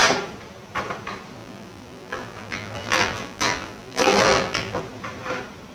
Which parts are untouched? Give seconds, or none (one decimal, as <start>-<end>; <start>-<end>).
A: 0.0-1.4; 4.8-5.7